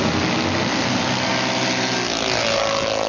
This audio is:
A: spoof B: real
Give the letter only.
B